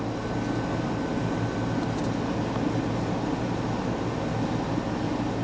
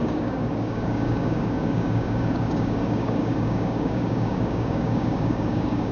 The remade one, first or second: second